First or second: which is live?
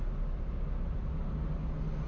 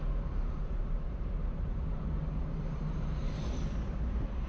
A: first